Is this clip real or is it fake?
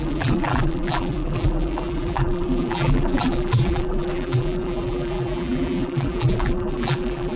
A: fake